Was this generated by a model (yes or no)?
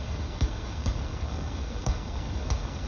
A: yes